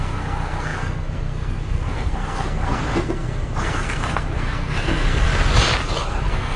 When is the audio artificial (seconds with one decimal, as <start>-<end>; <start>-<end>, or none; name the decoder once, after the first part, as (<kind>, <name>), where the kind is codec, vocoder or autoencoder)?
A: 0.0-5.3 (codec, SNAC); 6.0-6.6